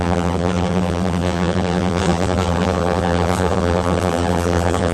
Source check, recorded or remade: remade